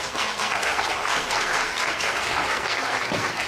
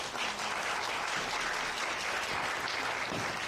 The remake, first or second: first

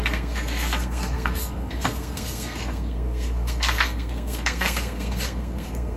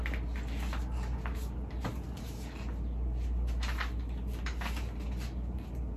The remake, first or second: first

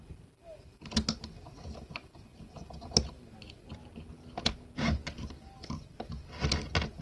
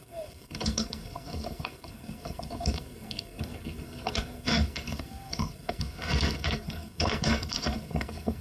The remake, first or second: second